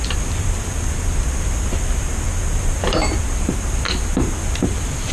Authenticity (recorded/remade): recorded